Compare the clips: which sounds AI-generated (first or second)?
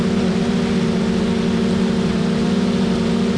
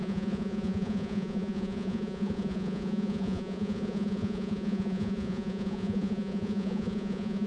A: second